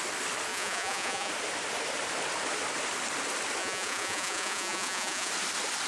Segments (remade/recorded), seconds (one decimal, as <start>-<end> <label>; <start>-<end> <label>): 0.0-0.5 recorded; 0.5-1.3 remade; 1.3-3.6 recorded; 3.6-5.3 remade; 5.3-5.9 recorded